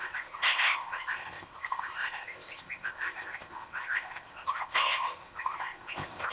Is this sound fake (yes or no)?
yes